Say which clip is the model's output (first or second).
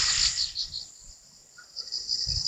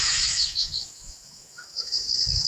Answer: second